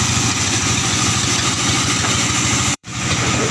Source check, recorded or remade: remade